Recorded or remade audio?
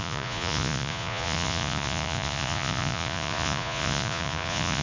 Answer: remade